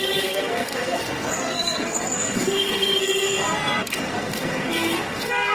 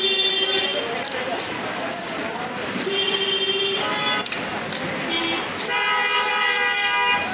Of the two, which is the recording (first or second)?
second